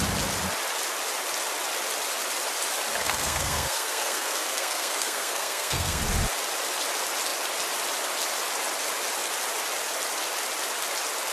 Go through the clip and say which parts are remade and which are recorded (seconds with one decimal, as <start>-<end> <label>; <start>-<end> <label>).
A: 0.0-3.0 recorded; 3.0-6.0 remade; 6.0-11.3 recorded